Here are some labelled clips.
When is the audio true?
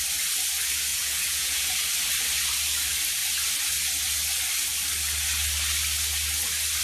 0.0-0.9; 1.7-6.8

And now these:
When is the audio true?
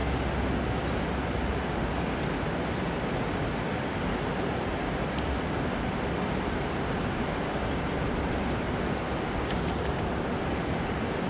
0.0-11.3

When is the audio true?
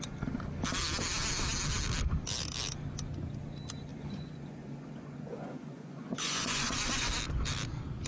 0.0-3.9; 7.1-8.1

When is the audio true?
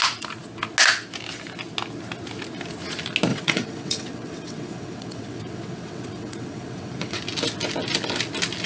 0.0-3.3; 7.2-8.7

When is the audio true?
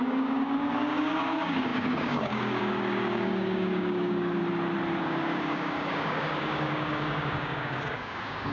4.4-5.0